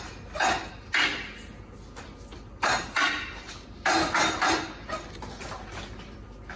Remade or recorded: recorded